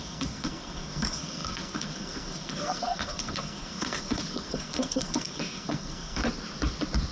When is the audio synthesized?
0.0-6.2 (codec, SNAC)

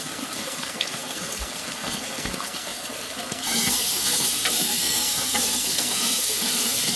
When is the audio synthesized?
0.0-7.0 (codec, SNAC)

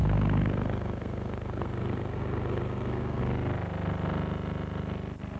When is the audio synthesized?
0.0-3.2 (codec, SNAC)